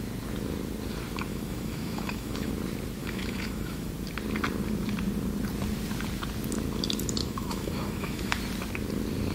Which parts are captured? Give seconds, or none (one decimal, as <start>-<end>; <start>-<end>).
0.0-1.3; 2.5-3.0; 3.9-7.2; 8.4-9.3